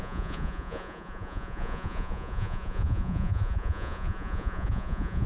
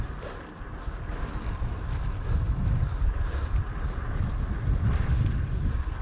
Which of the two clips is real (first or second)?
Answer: second